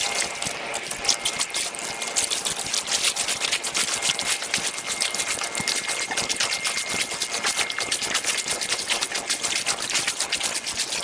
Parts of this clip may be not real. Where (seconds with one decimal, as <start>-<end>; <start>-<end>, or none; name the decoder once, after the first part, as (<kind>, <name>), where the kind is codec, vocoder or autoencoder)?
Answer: none